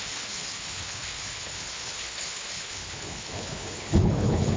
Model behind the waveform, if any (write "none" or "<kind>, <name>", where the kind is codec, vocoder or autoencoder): codec, HILCodec